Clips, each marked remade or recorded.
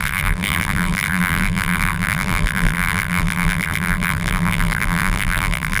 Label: remade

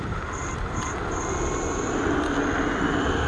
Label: recorded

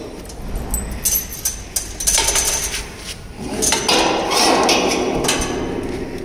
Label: recorded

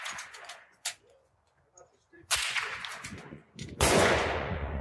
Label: remade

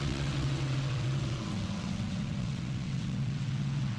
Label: remade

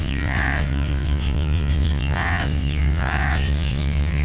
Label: remade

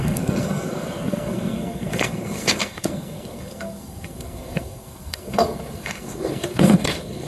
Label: remade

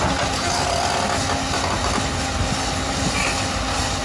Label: recorded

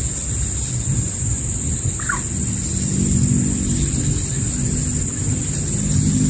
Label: recorded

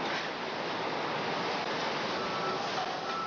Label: recorded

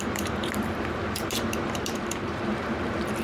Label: remade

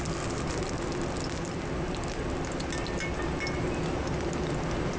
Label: recorded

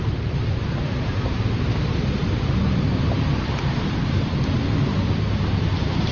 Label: remade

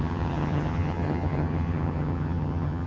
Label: remade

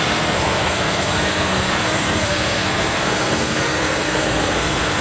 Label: remade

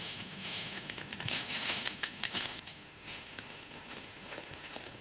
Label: remade